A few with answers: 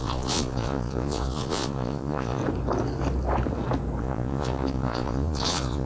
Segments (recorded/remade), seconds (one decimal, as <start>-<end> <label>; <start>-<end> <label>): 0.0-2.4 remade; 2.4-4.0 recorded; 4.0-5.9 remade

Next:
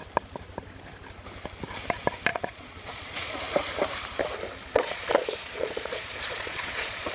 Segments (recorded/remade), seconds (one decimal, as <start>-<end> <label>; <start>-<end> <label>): 0.0-2.3 recorded; 2.3-3.4 remade; 3.4-4.6 recorded; 4.6-7.1 remade

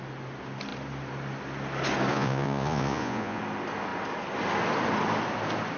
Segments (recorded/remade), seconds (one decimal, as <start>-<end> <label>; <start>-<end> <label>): 0.0-2.1 recorded; 2.1-3.4 remade; 3.4-5.8 recorded

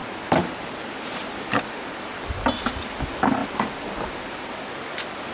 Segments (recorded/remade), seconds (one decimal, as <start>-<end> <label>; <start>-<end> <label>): 0.0-5.3 recorded

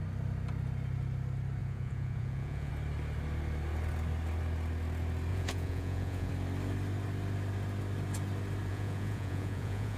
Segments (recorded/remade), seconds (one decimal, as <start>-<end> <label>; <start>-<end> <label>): 0.0-1.6 recorded; 1.6-2.7 remade; 2.7-5.3 recorded; 5.3-6.3 remade; 6.3-8.7 recorded; 8.7-10.0 remade